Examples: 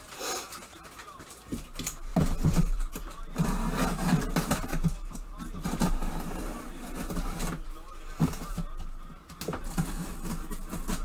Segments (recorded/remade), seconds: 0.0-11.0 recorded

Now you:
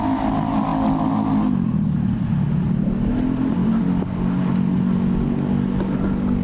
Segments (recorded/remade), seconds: 0.0-6.4 recorded

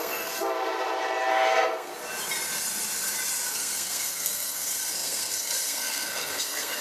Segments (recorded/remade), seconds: 0.0-0.4 remade; 0.4-1.3 recorded; 1.3-1.9 remade; 1.9-3.5 recorded; 3.5-6.8 remade

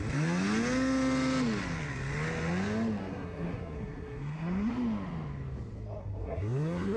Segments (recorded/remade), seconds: 0.0-3.0 recorded; 3.0-4.7 remade; 4.7-6.0 recorded; 6.0-7.0 remade

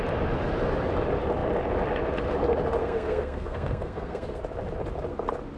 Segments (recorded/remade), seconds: 0.0-2.8 recorded; 2.8-4.4 remade; 4.4-5.6 recorded

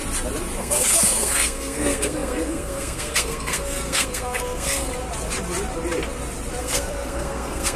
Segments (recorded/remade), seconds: 0.0-0.6 recorded; 0.6-4.9 remade; 4.9-6.6 recorded; 6.6-7.8 remade

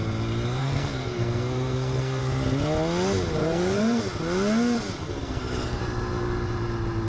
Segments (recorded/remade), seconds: 0.0-0.6 recorded; 0.6-2.2 remade; 2.2-3.4 recorded; 3.4-4.0 remade; 4.0-5.2 recorded; 5.2-5.8 remade; 5.8-7.1 recorded

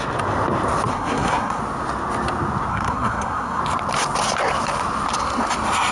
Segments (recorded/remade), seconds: 0.0-0.9 recorded; 0.9-1.6 remade; 1.6-2.7 recorded; 2.7-3.6 remade; 3.6-5.9 recorded